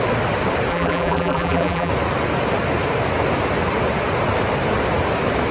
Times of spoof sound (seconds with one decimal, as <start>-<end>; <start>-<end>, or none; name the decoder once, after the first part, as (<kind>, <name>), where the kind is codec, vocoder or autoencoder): 0.7-1.9 (vocoder, BigVGAN v2)

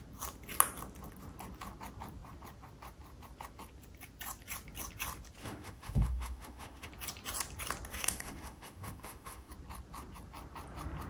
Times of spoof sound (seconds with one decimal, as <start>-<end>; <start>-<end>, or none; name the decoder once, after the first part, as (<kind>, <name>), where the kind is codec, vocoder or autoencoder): 5.4-6.9 (autoencoder, DAC-VAE); 7.9-9.5

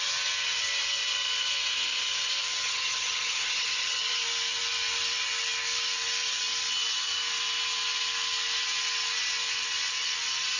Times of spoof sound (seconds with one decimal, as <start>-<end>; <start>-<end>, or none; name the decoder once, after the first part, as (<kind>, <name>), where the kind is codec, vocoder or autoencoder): 2.6-4.2 (vocoder, HiFi-GAN)